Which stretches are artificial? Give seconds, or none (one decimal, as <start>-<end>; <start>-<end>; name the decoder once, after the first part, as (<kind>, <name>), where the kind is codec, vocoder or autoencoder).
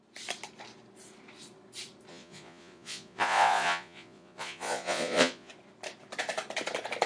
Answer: 2.1-5.5 (vocoder, Vocos)